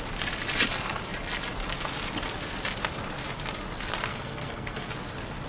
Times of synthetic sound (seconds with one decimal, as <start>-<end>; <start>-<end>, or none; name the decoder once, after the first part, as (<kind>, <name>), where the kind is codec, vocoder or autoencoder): 4.1-4.9 (codec, SNAC)